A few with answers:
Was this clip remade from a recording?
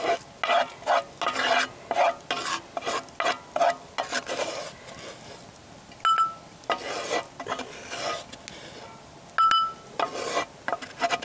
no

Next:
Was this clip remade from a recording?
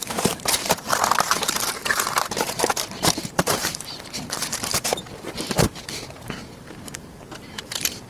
yes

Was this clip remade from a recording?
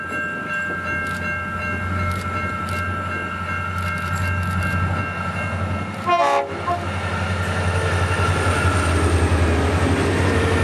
no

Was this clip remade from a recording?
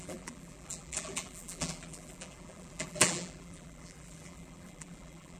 yes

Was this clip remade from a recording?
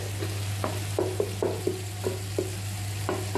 no